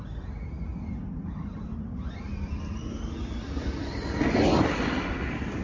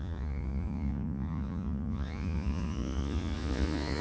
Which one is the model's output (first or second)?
second